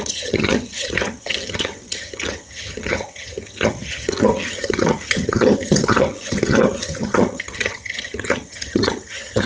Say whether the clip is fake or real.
fake